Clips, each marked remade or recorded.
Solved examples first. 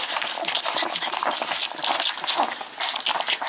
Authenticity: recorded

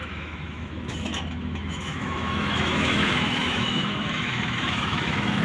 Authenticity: remade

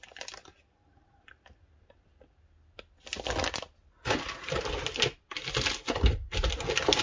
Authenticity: recorded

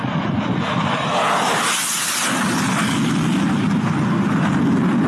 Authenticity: recorded